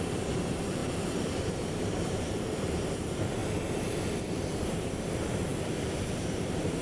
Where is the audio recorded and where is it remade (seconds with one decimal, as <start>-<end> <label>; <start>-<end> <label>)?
0.0-3.4 remade; 3.4-4.2 recorded; 4.2-6.8 remade